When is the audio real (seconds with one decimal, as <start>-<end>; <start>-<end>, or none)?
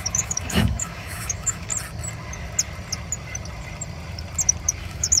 1.7-4.8